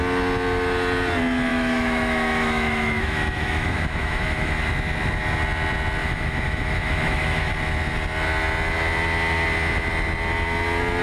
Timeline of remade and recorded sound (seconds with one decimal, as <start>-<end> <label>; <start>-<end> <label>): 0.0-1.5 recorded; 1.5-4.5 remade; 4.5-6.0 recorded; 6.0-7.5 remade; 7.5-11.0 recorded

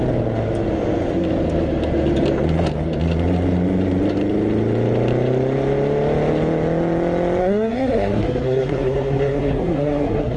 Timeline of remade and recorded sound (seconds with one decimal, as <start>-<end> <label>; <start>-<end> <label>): 0.0-7.4 recorded; 7.4-10.4 remade

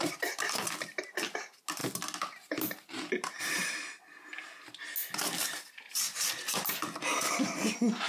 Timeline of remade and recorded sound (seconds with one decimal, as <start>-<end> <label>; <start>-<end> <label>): 0.0-8.1 recorded

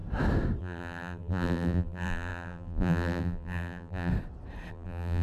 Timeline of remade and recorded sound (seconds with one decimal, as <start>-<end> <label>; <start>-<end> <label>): 0.0-0.6 recorded; 0.6-4.1 remade; 4.1-4.7 recorded; 4.7-5.2 remade